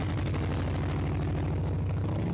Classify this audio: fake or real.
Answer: real